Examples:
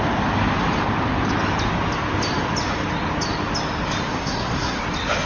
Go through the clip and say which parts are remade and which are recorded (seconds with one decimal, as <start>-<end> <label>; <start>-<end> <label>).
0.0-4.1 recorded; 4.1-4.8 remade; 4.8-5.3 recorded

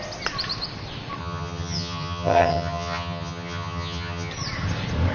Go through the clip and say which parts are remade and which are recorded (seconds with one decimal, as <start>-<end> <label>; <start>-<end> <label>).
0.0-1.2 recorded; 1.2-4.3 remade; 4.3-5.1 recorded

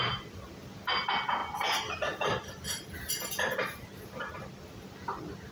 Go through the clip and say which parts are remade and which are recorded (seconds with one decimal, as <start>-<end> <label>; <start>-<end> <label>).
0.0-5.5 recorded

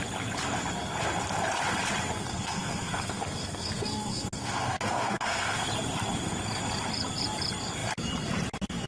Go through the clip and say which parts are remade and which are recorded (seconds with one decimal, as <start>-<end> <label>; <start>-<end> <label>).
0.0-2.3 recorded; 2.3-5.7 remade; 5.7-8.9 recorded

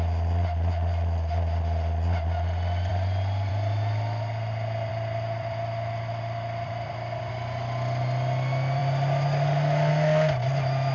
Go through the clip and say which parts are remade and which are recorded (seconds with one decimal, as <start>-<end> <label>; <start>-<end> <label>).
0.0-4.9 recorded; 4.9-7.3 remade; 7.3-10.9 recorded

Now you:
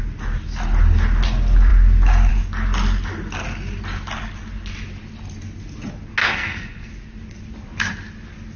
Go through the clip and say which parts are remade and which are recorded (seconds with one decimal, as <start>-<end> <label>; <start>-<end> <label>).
0.0-6.2 recorded; 6.2-6.9 remade; 6.9-8.6 recorded

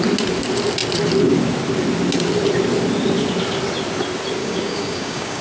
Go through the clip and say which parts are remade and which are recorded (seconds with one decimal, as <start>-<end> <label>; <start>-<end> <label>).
0.0-4.4 recorded; 4.4-5.4 remade